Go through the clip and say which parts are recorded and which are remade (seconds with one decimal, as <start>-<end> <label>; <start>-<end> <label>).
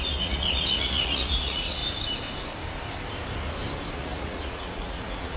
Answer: 0.0-1.8 remade; 1.8-3.9 recorded; 3.9-5.4 remade